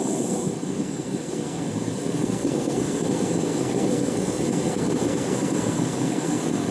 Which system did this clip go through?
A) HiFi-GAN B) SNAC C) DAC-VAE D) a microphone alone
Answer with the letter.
B